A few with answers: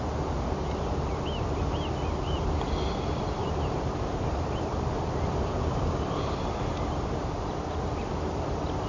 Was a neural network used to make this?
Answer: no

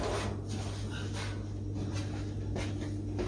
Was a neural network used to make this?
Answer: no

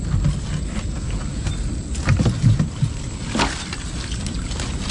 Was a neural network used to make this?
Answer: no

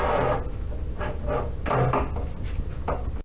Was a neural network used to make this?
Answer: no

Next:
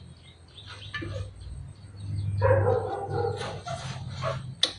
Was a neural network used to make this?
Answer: no